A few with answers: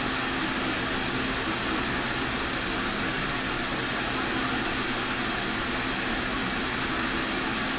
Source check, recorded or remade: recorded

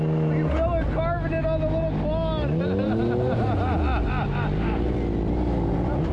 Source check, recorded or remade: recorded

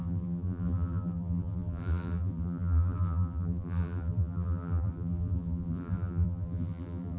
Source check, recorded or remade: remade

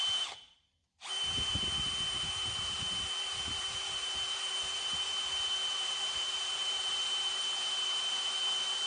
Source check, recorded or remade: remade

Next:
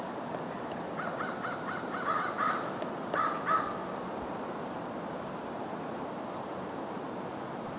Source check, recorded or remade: recorded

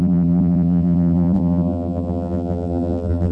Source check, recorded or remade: remade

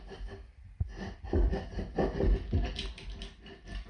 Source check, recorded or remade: recorded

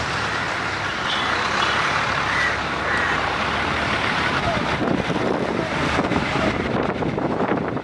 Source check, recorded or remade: remade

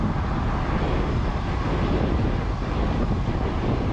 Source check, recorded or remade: recorded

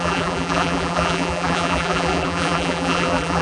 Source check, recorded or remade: remade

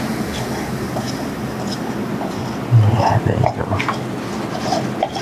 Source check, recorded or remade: recorded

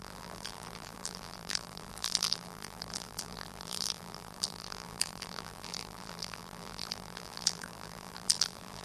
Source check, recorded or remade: remade